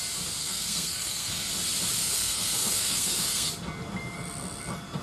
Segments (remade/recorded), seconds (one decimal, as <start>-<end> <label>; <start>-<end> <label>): 0.0-0.4 recorded; 0.4-1.5 remade; 1.5-2.0 recorded; 2.0-3.5 remade; 3.5-5.0 recorded